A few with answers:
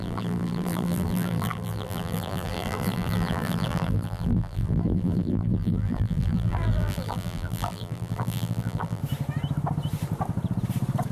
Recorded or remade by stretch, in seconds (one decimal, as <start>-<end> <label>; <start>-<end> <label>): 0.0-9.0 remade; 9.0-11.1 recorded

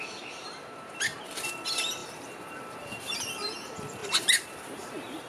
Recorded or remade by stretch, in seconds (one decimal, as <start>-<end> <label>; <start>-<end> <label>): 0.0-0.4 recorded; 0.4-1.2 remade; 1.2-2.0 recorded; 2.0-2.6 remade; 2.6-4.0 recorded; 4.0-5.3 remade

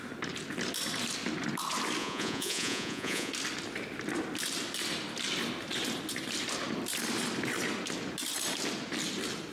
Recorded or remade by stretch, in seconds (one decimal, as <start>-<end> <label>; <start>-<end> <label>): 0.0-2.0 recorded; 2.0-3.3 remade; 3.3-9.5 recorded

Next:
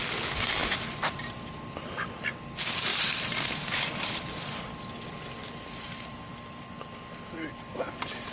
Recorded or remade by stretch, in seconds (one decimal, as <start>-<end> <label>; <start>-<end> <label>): 0.0-0.6 recorded; 0.6-2.1 remade; 2.1-2.9 recorded; 2.9-4.8 remade; 4.8-5.4 recorded; 5.4-6.6 remade; 6.6-8.3 recorded

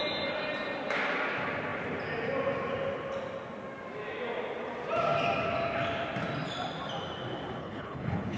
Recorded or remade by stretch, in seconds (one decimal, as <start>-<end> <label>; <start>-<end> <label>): 0.0-7.6 recorded; 7.6-8.4 remade

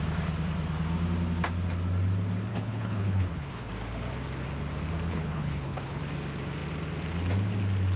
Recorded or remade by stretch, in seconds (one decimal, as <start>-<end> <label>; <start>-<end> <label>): 0.0-2.5 recorded; 2.5-3.7 remade; 3.7-5.1 recorded; 5.1-6.0 remade; 6.0-8.0 recorded

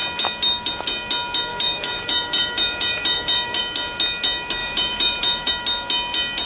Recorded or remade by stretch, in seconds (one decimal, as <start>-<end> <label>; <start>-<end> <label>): 0.0-1.5 recorded; 1.5-3.6 remade; 3.6-4.6 recorded; 4.6-5.5 remade; 5.5-6.5 recorded

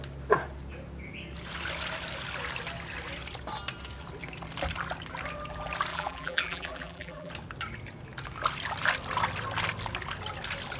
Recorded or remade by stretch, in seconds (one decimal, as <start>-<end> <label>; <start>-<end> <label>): 0.0-5.9 recorded; 5.9-7.3 remade; 7.3-10.8 recorded